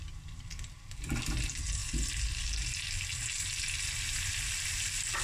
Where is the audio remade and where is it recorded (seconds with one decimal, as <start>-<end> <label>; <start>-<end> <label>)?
0.0-5.2 recorded